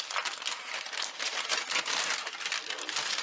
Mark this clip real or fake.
real